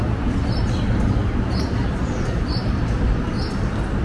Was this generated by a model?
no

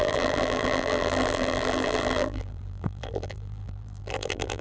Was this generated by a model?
yes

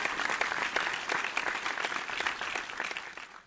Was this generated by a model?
yes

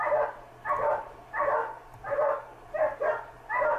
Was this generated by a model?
no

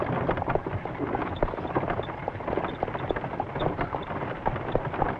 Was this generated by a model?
no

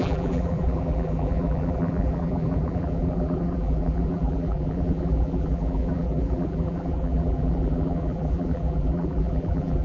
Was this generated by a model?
yes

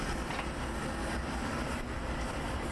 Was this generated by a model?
no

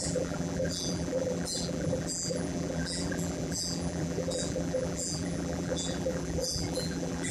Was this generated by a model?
yes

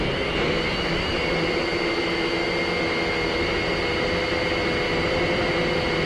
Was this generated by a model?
no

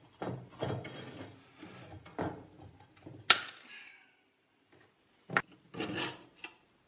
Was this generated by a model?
no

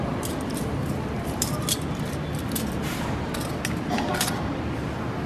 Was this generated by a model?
no